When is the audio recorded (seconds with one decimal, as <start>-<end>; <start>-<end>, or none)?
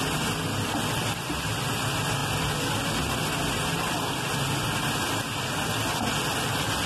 0.0-6.9